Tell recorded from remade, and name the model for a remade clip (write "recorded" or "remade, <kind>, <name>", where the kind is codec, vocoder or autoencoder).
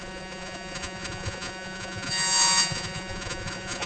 remade, vocoder, Vocos